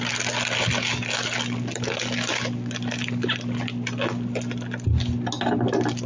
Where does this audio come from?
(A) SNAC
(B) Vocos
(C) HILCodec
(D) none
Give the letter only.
D